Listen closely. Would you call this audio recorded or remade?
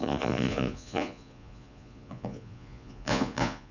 remade